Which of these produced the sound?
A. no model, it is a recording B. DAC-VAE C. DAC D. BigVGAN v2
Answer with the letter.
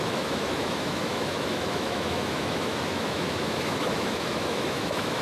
B